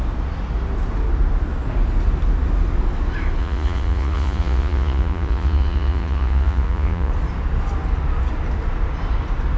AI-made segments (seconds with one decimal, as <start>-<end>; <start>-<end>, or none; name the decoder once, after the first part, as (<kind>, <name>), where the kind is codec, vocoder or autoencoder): 3.4-7.1 (vocoder, Vocos)